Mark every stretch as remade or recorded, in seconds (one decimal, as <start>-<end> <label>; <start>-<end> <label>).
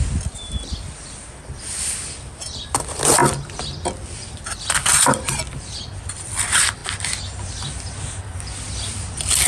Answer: 0.0-6.8 remade; 6.8-9.5 recorded